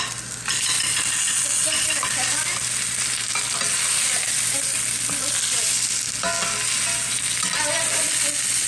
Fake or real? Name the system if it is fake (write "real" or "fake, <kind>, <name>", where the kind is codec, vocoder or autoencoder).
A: real